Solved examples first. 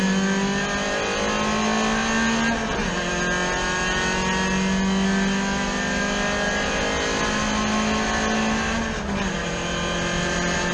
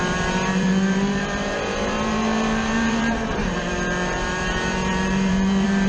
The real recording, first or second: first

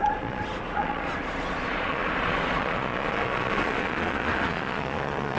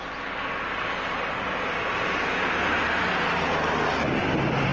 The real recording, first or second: second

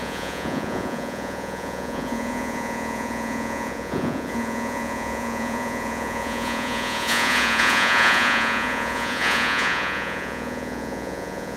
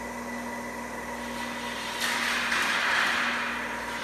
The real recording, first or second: second